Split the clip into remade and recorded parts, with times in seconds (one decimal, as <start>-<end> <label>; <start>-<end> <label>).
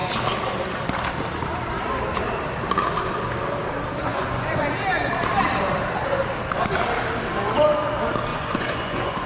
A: 0.0-4.0 recorded; 4.0-4.6 remade; 4.6-8.3 recorded; 8.3-9.3 remade